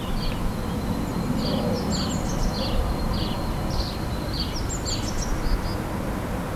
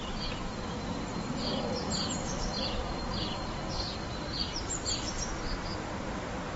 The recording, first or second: first